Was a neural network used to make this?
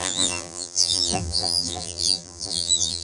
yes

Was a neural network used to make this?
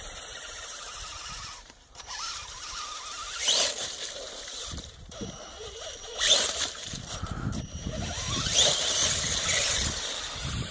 yes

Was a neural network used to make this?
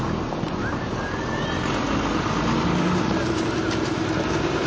no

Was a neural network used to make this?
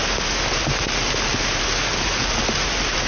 no